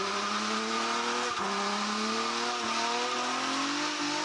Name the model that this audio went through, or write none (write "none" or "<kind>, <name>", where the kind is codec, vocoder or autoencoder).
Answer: none